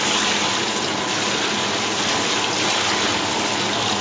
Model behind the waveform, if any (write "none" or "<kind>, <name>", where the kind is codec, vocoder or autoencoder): none